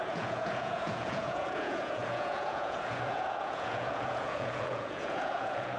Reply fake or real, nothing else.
fake